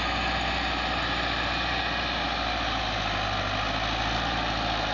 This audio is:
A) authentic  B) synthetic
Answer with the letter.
A